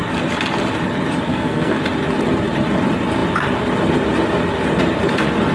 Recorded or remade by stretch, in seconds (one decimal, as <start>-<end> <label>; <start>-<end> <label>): 0.0-1.3 recorded; 1.3-1.8 remade; 1.8-5.5 recorded